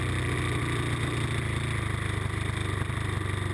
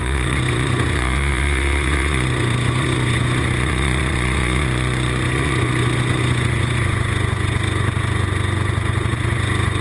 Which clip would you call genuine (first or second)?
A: first